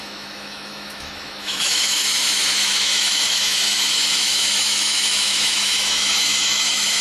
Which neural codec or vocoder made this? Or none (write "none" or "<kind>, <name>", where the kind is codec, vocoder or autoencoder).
autoencoder, DAC-VAE